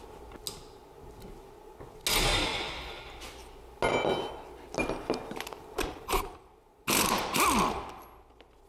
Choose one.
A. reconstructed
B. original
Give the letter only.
B